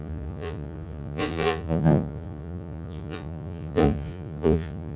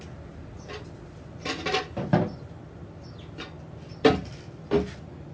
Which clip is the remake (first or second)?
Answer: first